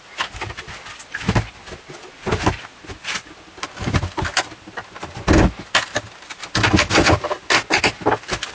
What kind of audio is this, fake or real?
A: real